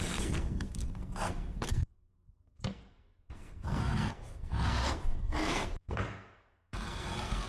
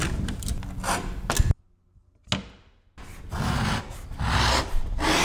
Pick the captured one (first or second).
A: second